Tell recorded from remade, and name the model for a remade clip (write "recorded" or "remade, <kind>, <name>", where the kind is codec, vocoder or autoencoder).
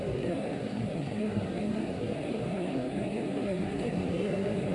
remade, codec, SNAC